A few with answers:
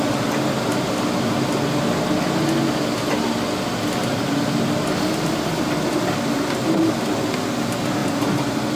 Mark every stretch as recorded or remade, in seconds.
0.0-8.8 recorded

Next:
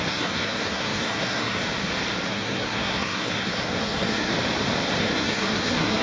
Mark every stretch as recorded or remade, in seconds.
0.0-1.6 remade; 1.6-2.3 recorded; 2.3-4.3 remade; 4.3-5.0 recorded; 5.0-6.0 remade

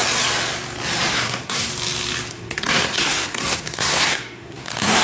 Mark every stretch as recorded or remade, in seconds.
0.0-1.1 recorded; 1.1-1.7 remade; 1.7-2.3 recorded; 2.3-5.0 remade

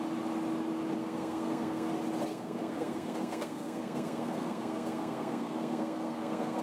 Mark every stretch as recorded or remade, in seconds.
0.0-1.0 recorded; 1.0-1.9 remade; 1.9-2.3 recorded; 2.3-6.6 remade

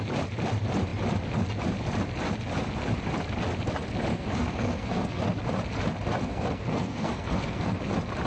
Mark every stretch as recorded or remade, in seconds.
0.0-4.1 recorded; 4.1-5.2 remade; 5.2-6.2 recorded; 6.2-7.8 remade; 7.8-8.3 recorded

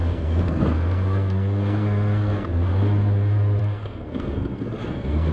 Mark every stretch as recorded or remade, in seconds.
0.0-2.7 remade; 2.7-3.6 recorded; 3.6-5.3 remade

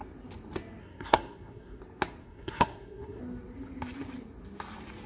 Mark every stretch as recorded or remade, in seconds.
0.0-0.8 recorded; 0.8-1.8 remade; 1.8-2.2 recorded; 2.2-3.2 remade; 3.2-5.1 recorded

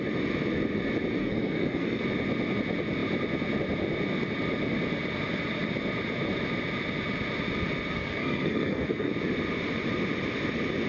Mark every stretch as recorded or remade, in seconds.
0.0-1.2 recorded; 1.2-2.0 remade; 2.0-7.9 recorded; 7.9-9.1 remade; 9.1-10.9 recorded